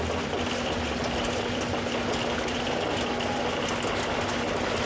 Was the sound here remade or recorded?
recorded